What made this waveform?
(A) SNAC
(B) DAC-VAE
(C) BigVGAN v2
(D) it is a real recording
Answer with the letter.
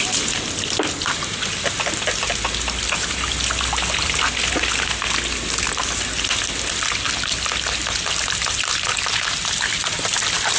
D